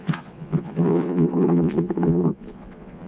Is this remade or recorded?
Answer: remade